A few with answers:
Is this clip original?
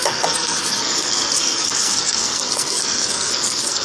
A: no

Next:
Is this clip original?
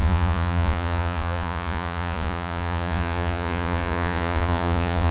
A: no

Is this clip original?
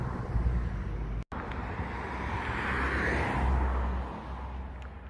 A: yes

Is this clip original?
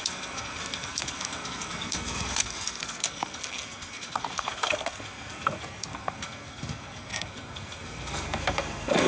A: no